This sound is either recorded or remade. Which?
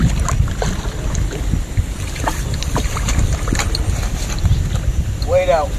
recorded